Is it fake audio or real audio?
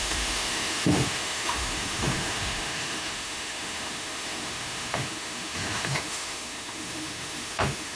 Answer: fake